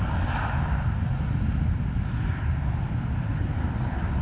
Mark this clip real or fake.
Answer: real